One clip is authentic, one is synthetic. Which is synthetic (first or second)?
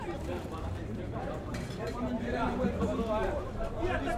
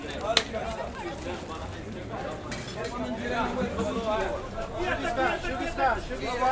first